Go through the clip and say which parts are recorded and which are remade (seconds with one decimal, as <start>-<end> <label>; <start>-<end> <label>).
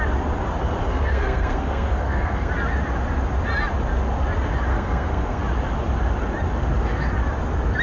0.0-0.9 recorded; 0.9-2.5 remade; 2.5-4.7 recorded; 4.7-5.4 remade; 5.4-7.8 recorded